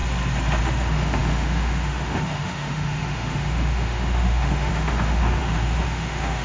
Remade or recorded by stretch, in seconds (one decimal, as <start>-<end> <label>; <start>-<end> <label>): 0.0-0.6 recorded; 0.6-6.4 remade